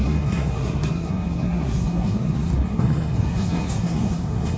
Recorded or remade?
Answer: remade